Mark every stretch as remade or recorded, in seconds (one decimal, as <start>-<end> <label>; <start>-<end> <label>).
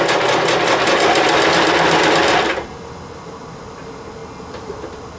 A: 0.0-5.2 recorded